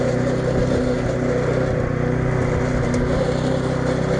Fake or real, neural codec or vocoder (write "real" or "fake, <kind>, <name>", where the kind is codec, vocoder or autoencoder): real